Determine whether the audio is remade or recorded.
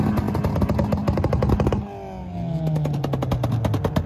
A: recorded